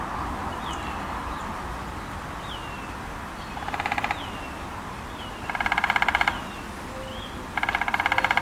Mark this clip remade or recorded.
recorded